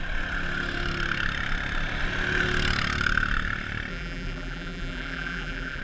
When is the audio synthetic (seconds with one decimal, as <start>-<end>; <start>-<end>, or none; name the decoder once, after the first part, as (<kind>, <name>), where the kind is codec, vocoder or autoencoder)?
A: 3.9-5.8 (vocoder, BigVGAN v2)